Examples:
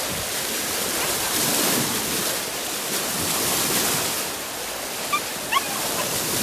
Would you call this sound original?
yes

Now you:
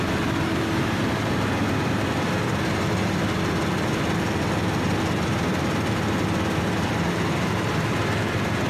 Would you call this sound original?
yes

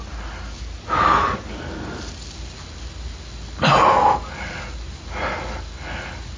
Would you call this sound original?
yes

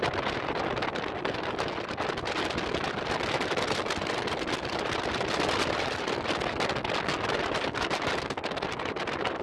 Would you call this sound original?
yes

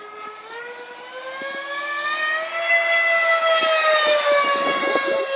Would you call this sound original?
yes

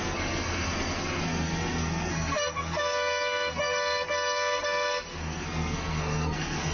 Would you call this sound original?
no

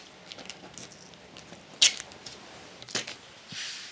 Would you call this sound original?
yes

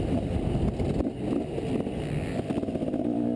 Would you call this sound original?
yes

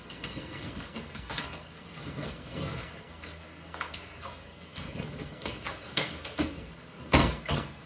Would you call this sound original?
no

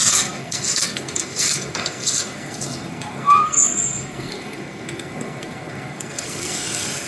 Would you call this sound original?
no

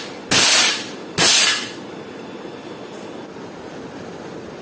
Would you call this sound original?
yes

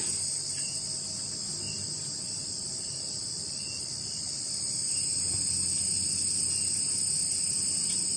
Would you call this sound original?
yes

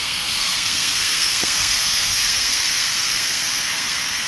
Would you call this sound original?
no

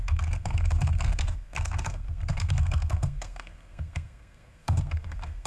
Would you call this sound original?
no